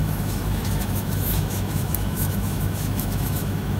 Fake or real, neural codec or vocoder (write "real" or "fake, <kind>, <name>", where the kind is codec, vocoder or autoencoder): fake, autoencoder, DAC-VAE